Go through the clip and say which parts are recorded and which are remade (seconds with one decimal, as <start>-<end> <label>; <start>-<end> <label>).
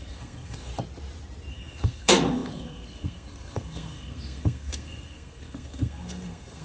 0.0-0.7 remade; 0.7-1.5 recorded; 1.5-6.6 remade